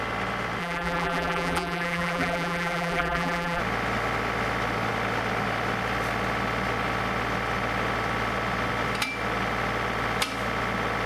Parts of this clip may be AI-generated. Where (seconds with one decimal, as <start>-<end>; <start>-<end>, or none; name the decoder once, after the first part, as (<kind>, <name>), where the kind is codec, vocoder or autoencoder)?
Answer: 0.6-3.6 (vocoder, BigVGAN v2)